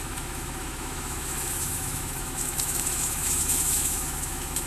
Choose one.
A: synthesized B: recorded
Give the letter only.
A